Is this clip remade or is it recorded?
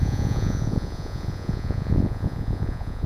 remade